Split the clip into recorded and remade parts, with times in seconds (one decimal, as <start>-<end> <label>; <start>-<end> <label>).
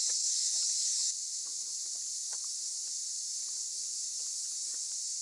0.0-1.0 remade; 1.0-2.2 recorded; 2.2-2.8 remade; 2.8-4.8 recorded; 4.8-5.2 remade